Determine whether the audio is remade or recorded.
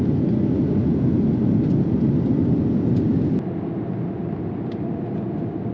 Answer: recorded